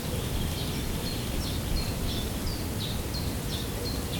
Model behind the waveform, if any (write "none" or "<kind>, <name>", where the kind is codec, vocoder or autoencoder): none